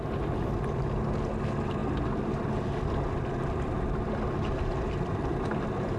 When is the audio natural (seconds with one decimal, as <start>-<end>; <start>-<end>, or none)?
0.0-6.0